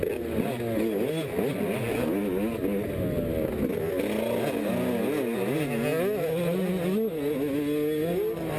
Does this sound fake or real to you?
real